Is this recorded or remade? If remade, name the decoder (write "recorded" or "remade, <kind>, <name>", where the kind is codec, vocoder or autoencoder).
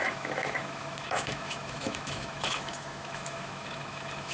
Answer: remade, autoencoder, DAC-VAE